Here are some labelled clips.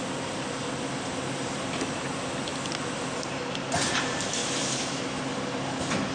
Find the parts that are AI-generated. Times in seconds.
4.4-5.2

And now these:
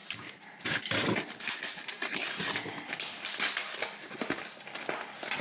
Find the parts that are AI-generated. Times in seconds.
none

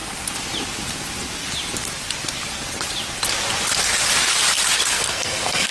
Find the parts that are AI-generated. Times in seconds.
4.9-5.7

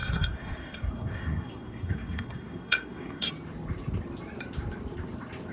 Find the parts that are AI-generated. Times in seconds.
0.0-3.3